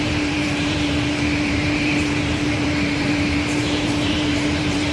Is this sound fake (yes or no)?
yes